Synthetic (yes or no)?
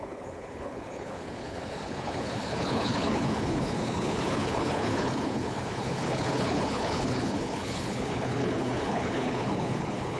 yes